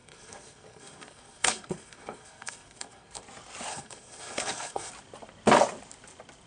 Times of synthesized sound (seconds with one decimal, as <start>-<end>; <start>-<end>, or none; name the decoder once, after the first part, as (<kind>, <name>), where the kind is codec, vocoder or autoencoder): 0.0-3.2 (codec, SNAC); 3.7-4.9